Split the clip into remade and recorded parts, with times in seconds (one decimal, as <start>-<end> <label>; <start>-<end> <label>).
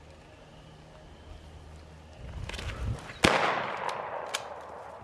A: 0.0-5.0 recorded